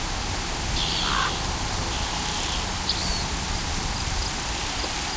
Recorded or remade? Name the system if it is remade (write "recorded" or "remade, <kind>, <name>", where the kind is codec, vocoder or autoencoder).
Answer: recorded